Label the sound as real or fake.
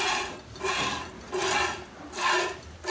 real